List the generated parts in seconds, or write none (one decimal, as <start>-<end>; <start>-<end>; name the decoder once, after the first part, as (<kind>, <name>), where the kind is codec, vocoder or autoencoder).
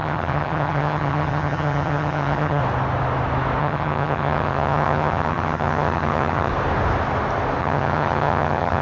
0.0-2.6 (vocoder, HiFi-GAN); 3.6-6.5; 7.6-8.8